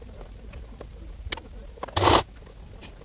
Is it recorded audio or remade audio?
recorded